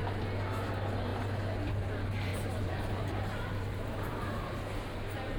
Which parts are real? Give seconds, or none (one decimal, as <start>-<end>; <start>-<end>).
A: 0.0-2.3; 4.5-5.4